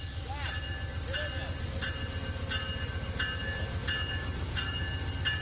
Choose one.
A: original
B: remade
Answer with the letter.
A